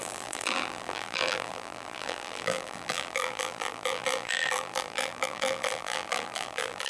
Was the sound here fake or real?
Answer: fake